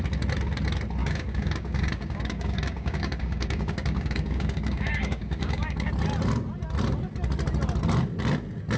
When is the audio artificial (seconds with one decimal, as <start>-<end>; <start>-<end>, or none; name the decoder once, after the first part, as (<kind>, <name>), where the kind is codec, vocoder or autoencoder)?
1.0-5.9 (codec, DAC)